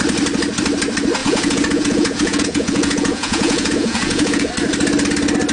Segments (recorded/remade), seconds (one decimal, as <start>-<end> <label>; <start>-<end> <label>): 0.0-1.2 recorded; 1.2-4.5 remade; 4.5-5.5 recorded